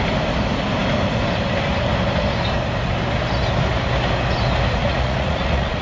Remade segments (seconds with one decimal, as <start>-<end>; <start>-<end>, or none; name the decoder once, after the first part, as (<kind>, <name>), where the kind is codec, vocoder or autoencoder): 4.8-5.8 (vocoder, Vocos)